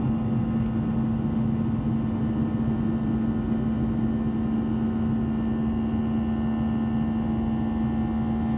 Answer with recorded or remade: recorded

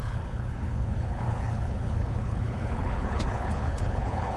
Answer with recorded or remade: remade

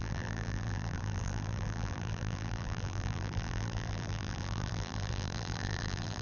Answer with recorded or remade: remade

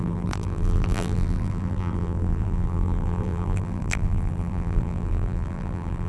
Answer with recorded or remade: remade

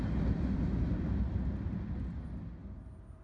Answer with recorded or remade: recorded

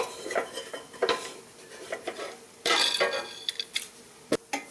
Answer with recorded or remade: recorded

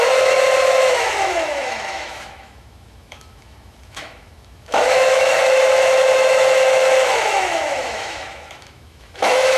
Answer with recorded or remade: remade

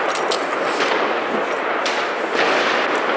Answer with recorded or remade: recorded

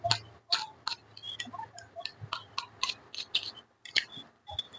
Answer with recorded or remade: recorded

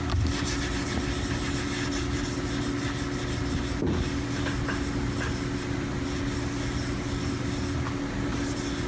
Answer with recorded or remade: recorded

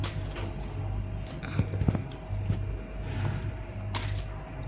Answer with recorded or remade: recorded